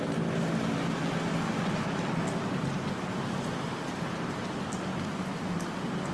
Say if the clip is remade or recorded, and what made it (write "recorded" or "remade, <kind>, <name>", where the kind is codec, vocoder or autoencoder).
recorded